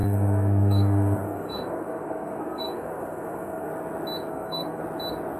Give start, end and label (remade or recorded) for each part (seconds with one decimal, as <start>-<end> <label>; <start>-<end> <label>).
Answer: 0.0-3.7 remade; 3.7-4.3 recorded; 4.3-4.8 remade; 4.8-5.4 recorded